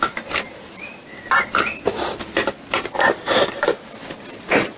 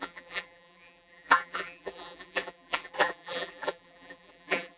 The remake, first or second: second